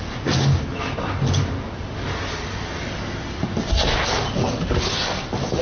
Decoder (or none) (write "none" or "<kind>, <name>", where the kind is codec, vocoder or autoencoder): none